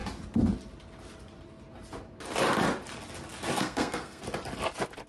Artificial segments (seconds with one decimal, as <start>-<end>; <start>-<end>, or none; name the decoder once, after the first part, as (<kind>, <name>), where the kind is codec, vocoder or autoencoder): 3.5-4.2 (codec, SNAC)